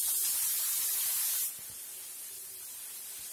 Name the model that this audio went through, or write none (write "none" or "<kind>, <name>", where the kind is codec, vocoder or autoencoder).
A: none